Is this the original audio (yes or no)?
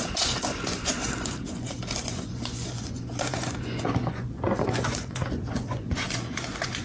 no